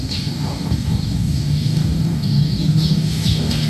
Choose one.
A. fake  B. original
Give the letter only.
A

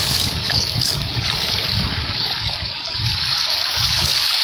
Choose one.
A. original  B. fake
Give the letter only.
B